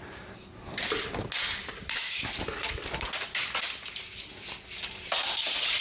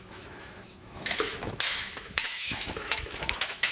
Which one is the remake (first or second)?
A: second